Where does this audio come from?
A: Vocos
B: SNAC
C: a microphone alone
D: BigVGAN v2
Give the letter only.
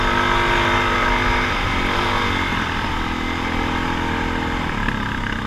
C